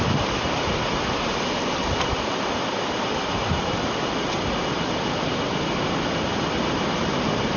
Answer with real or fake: real